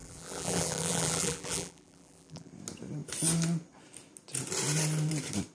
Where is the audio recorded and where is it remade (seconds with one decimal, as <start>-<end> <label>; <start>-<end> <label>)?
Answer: 0.0-2.5 remade; 2.5-5.5 recorded

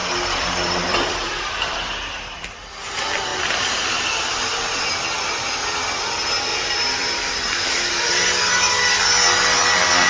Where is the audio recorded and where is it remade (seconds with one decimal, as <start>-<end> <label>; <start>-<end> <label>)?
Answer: 0.0-1.9 remade; 1.9-3.3 recorded; 3.3-4.9 remade; 4.9-6.5 recorded; 6.5-7.9 remade; 7.9-10.1 recorded